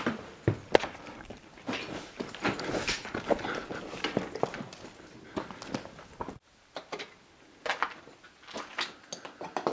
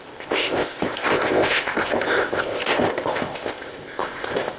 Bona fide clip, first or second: first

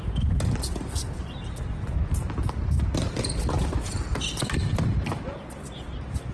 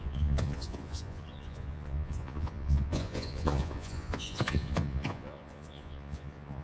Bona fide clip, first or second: first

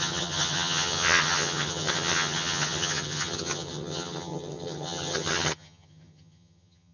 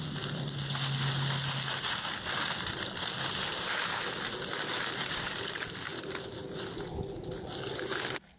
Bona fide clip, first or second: second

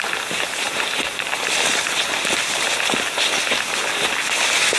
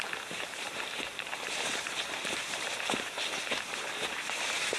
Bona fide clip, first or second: first